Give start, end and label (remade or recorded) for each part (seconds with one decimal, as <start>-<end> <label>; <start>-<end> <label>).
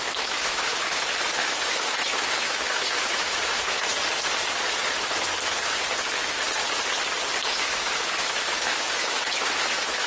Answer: 0.0-3.9 remade; 3.9-7.4 recorded; 7.4-10.1 remade